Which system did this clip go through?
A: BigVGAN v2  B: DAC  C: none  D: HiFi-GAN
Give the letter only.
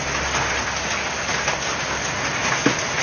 C